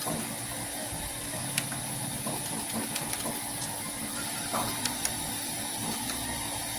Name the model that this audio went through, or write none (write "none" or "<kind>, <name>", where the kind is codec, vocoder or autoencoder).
none